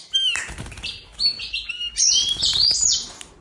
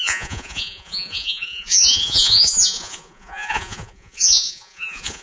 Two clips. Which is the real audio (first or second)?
first